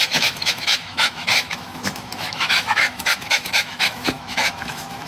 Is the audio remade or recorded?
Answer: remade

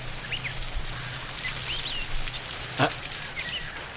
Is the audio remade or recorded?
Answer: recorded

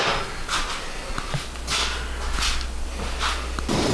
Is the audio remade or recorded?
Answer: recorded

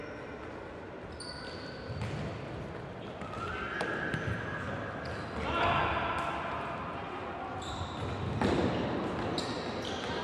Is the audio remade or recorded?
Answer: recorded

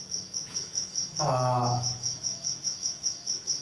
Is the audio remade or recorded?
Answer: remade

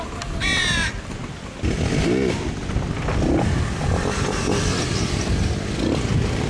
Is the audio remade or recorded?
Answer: recorded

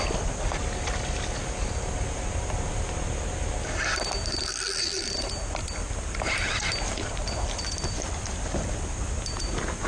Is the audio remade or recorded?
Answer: recorded